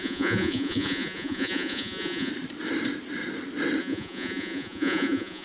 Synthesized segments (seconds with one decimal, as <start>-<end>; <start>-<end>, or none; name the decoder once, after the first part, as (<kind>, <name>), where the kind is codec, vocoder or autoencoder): 0.0-2.3 (vocoder, Vocos); 3.8-5.4